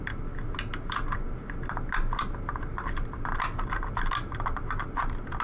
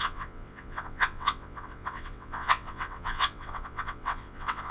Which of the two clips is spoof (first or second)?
second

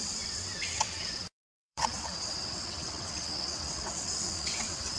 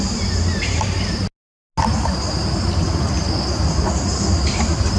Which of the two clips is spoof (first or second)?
first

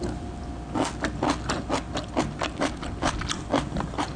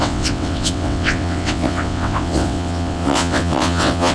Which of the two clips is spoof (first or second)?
second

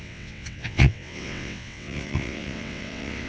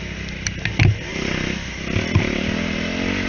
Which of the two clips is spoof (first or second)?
first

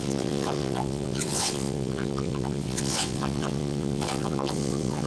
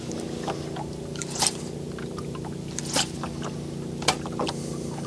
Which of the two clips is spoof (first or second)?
first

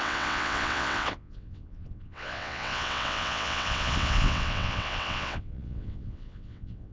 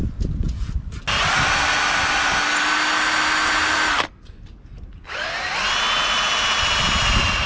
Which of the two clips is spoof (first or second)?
first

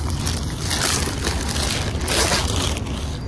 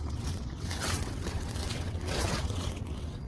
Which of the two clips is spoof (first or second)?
second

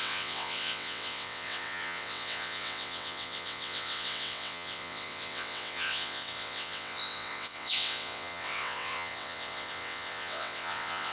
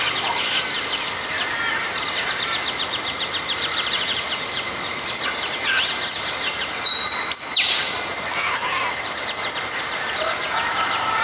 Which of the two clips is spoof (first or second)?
first